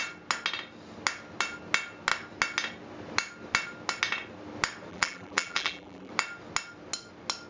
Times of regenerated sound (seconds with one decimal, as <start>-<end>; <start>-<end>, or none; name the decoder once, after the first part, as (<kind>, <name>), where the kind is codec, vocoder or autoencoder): 4.9-6.1 (vocoder, BigVGAN v2)